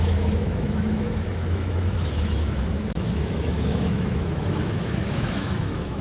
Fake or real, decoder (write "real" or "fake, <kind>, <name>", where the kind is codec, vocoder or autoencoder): fake, autoencoder, DAC-VAE